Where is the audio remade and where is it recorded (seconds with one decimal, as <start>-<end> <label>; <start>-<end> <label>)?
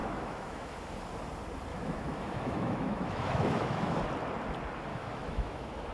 0.0-0.8 remade; 0.8-1.7 recorded; 1.7-4.0 remade; 4.0-4.9 recorded; 4.9-5.9 remade